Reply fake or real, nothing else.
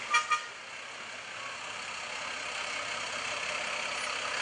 real